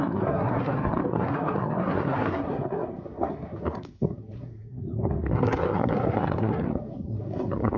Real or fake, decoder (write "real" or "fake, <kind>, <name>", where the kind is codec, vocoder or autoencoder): fake, codec, SNAC